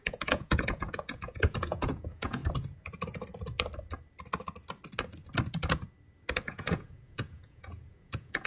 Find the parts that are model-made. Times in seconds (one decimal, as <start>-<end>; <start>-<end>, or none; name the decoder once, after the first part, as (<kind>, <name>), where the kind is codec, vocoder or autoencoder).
0.0-2.4 (vocoder, Vocos); 6.5-8.5